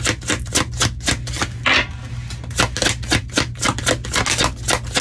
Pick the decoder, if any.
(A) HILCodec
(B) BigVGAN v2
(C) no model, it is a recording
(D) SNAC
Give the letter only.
C